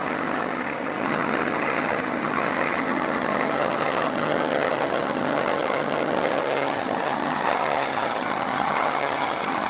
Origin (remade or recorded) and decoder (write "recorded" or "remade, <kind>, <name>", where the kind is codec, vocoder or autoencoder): remade, vocoder, HiFi-GAN